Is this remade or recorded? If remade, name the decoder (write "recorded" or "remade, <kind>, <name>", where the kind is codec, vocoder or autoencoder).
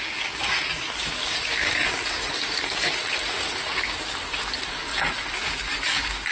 remade, codec, DAC